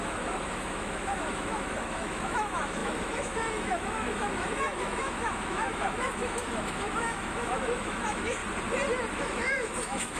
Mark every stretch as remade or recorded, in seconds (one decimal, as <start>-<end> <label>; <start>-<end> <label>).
0.0-8.4 remade; 8.4-9.1 recorded; 9.1-10.2 remade